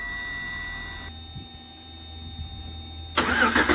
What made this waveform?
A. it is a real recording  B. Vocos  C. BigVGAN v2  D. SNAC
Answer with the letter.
A